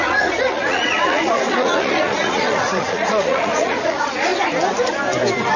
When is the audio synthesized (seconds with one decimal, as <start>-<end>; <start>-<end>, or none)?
0.0-4.3